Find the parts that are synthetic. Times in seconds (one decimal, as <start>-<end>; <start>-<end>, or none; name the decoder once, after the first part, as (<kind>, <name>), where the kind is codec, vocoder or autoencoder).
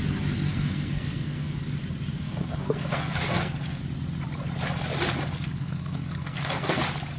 0.5-1.6 (codec, SNAC); 2.2-3.8; 5.6-6.8